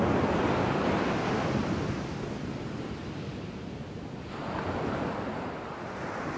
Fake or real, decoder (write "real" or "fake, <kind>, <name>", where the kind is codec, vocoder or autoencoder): real